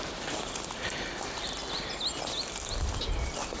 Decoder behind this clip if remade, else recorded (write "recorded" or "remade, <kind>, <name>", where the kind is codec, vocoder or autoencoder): recorded